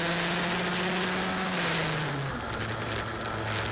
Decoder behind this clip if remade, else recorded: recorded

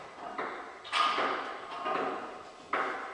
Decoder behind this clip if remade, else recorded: recorded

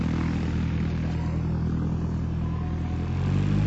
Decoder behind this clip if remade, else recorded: recorded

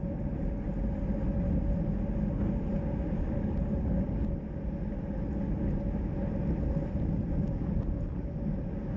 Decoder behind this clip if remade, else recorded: recorded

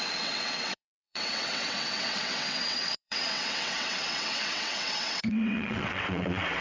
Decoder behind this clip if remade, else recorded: remade, vocoder, WaveNeXt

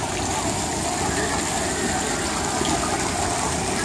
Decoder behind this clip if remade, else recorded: recorded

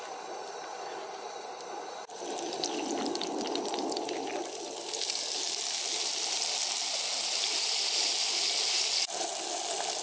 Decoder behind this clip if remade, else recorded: recorded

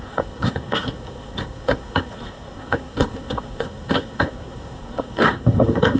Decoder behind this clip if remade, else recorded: remade, codec, SNAC